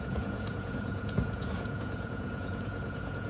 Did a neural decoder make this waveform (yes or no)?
yes